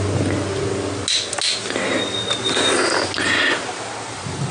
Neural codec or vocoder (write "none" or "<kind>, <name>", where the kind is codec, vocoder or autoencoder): none